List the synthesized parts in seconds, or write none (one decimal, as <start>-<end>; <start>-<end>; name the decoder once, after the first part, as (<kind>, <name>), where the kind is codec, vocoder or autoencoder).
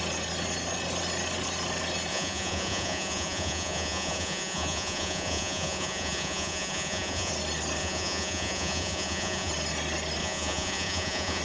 2.1-7.3 (vocoder, Vocos); 7.8-9.5; 10.2-11.4